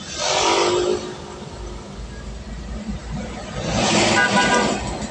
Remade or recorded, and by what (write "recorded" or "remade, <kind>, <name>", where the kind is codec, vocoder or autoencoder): recorded